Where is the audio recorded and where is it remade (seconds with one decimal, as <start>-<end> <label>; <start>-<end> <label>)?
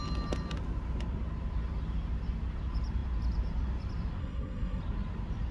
0.0-4.2 recorded; 4.2-4.8 remade; 4.8-5.5 recorded